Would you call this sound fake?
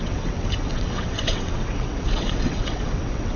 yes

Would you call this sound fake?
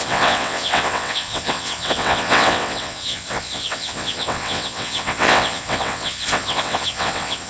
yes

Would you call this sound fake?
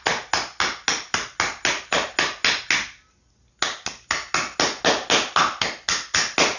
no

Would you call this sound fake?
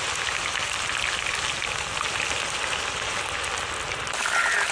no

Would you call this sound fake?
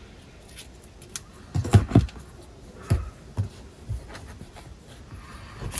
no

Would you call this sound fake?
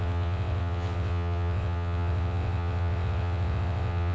yes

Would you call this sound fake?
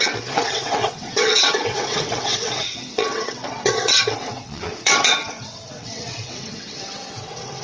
yes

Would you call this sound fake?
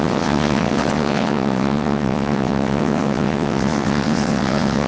yes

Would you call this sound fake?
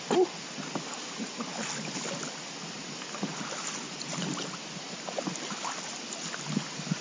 no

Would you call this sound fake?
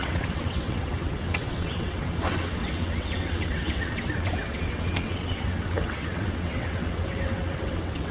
yes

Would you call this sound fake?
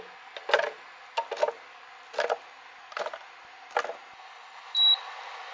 no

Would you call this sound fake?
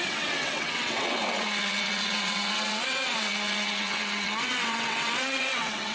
yes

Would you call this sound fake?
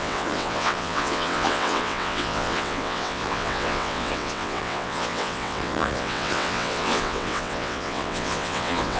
yes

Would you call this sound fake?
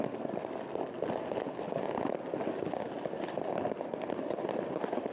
no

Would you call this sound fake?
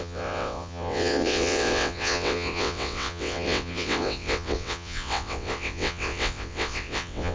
yes